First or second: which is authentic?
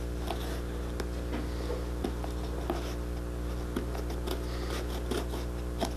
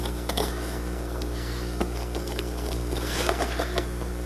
first